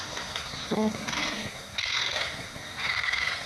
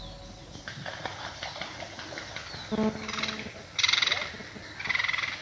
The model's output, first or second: first